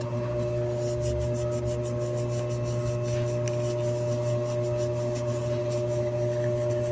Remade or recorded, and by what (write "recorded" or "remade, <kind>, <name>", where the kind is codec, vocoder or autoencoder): recorded